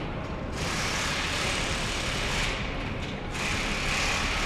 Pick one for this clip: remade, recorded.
remade